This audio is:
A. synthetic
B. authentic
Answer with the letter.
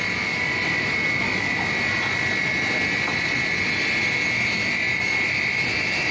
B